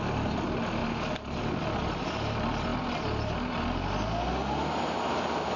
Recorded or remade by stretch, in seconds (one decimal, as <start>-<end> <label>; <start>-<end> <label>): 0.0-5.6 recorded